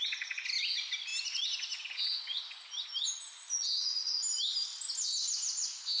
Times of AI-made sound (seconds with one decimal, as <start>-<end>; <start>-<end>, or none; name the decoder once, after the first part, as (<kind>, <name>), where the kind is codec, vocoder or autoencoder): none